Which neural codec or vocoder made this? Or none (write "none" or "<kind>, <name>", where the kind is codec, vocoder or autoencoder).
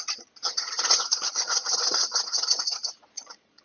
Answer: vocoder, Vocos